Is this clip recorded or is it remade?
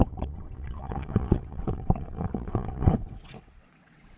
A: remade